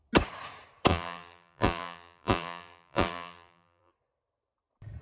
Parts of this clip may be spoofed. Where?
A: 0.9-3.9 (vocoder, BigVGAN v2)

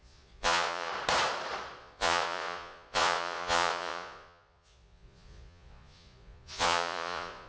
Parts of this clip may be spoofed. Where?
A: 0.0-0.9 (vocoder, Vocos); 1.8-7.5

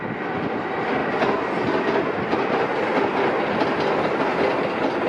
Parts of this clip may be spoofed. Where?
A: none

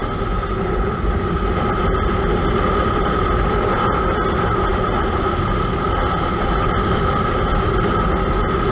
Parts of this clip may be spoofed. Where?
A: none